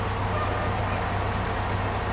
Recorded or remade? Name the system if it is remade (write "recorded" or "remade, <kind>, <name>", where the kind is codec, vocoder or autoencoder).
recorded